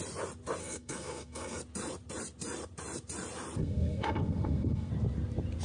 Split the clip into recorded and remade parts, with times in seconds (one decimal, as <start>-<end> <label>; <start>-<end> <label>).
0.0-0.6 recorded; 0.6-1.6 remade; 1.6-3.6 recorded; 3.6-4.9 remade; 4.9-5.6 recorded